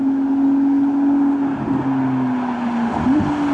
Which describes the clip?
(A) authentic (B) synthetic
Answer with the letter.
A